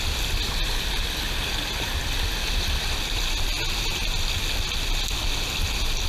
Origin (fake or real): real